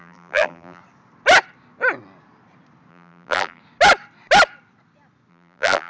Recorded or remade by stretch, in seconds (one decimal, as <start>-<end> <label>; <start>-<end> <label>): 0.0-0.8 remade; 0.8-2.9 recorded; 2.9-3.6 remade; 3.6-5.3 recorded; 5.3-5.9 remade